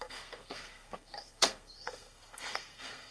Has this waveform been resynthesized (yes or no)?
yes